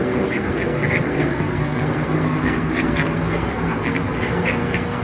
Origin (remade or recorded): remade